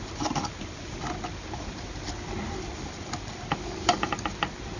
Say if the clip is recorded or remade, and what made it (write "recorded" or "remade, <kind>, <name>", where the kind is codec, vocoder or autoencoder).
recorded